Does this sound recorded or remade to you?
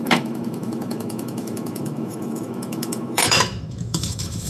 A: remade